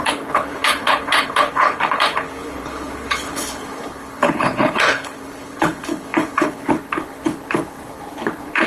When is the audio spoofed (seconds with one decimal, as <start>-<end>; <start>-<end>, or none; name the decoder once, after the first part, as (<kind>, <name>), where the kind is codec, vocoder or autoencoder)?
0.0-8.7 (codec, HILCodec)